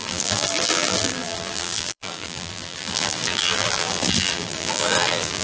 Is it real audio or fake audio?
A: fake